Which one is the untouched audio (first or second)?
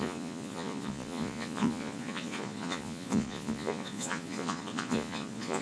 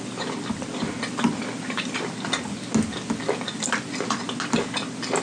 second